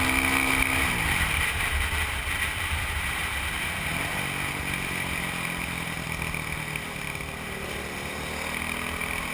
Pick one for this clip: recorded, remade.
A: recorded